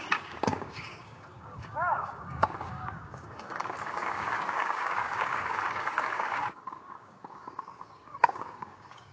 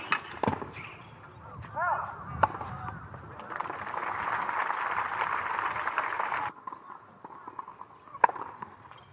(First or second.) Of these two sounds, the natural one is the second